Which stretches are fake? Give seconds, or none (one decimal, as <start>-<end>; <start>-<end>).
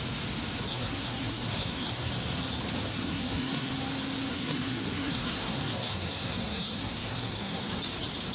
0.7-2.1; 2.9-3.7; 4.3-7.7